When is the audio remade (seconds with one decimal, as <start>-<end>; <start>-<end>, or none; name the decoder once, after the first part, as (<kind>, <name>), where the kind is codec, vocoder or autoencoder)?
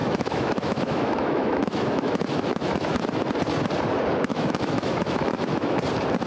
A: 0.0-3.0 (autoencoder, DAC-VAE); 4.3-5.8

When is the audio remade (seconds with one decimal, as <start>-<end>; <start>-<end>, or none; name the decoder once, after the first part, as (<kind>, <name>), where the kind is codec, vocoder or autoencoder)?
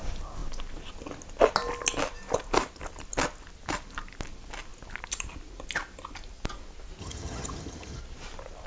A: 7.0-8.0 (vocoder, HiFi-GAN)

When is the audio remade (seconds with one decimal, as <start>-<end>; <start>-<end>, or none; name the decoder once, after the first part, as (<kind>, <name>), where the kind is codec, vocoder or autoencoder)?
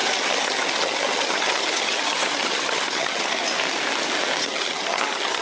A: 0.0-3.4 (vocoder, HiFi-GAN); 4.5-5.4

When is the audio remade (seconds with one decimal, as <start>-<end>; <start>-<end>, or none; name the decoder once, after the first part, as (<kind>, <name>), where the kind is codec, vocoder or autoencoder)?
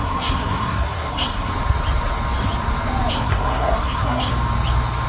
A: 0.0-1.5 (codec, SNAC); 3.1-4.3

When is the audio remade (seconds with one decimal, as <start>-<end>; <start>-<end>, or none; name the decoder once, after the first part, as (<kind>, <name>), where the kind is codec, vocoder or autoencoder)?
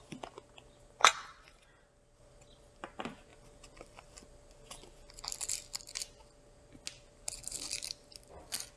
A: 1.1-2.2 (vocoder, BigVGAN v2); 3.3-5.5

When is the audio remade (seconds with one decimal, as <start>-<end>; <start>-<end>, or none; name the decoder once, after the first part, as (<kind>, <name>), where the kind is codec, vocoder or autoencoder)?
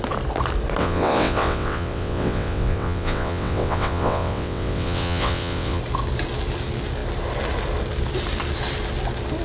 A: 0.8-5.8 (vocoder, WaveNeXt)